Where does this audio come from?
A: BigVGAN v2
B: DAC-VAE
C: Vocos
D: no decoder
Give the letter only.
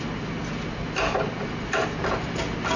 D